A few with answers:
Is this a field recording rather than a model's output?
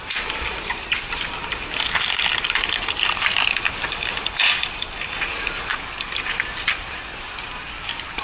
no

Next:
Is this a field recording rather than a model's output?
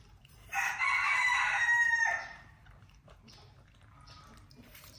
no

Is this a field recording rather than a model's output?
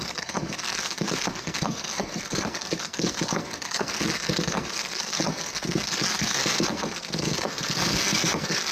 no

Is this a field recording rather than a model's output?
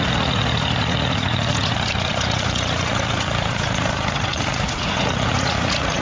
no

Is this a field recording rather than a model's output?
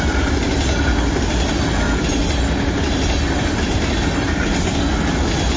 yes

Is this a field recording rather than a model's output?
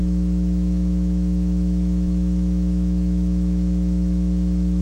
no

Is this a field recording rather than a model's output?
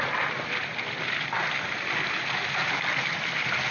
yes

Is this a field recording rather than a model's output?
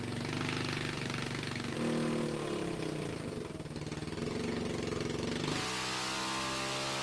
yes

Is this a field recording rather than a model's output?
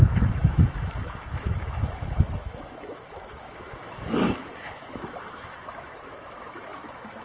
no